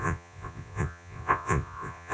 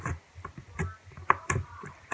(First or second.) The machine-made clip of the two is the first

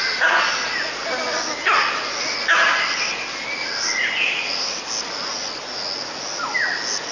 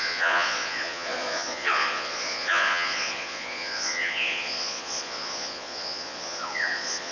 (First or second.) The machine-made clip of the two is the second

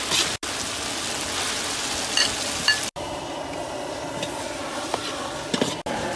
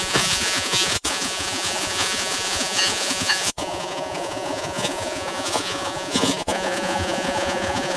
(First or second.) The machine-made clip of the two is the second